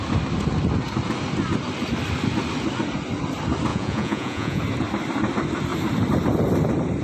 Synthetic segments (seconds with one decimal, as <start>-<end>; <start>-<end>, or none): 3.7-4.6

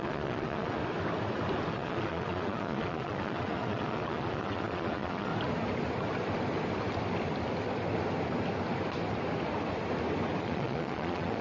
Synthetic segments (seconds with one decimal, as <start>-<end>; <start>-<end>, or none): 0.0-0.8; 1.7-5.3; 10.4-11.4

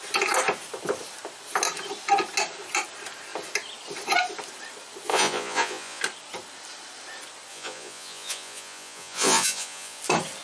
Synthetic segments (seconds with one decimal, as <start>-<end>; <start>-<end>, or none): 5.1-6.0; 7.5-10.0

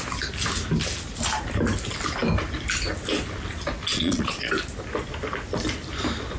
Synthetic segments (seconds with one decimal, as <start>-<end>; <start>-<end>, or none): 3.9-4.5